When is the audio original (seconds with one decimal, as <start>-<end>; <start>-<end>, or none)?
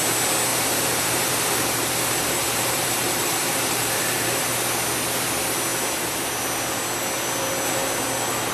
0.0-0.5; 4.5-8.5